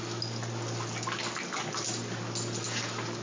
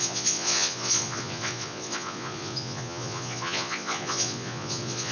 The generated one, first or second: second